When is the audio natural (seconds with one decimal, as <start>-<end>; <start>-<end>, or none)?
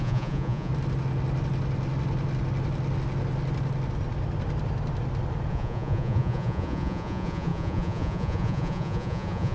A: 0.7-5.5